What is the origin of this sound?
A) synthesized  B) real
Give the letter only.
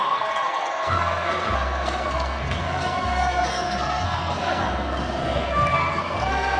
A